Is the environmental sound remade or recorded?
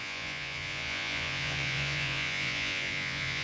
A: remade